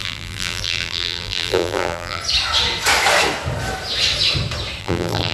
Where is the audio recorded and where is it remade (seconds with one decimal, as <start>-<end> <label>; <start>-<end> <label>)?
0.0-2.2 remade; 2.2-4.8 recorded; 4.8-5.3 remade